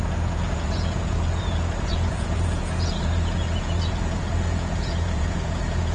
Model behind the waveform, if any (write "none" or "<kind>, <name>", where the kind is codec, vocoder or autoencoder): vocoder, Vocos